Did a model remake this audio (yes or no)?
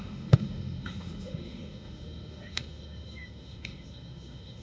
yes